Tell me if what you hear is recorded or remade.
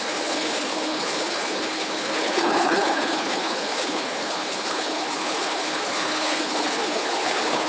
remade